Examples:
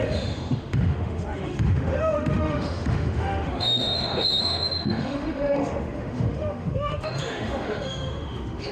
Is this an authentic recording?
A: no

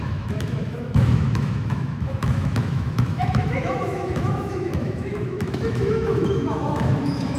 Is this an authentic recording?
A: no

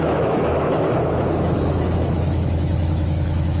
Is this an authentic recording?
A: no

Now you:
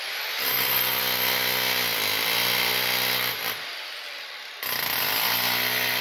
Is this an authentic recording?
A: yes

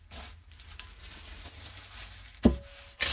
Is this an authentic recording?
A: yes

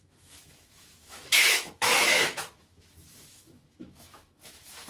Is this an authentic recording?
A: no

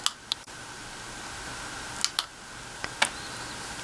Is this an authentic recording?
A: yes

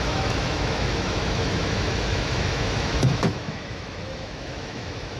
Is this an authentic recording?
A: no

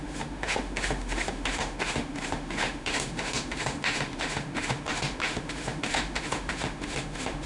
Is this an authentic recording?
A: no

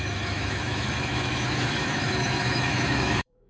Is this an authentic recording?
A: no